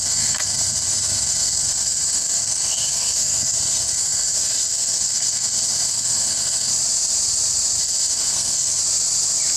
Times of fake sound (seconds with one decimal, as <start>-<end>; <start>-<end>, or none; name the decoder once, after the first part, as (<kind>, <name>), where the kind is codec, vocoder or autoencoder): 0.0-6.7 (codec, SNAC); 7.8-8.8